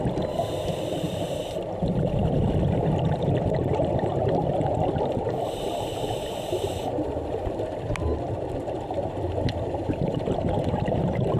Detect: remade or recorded remade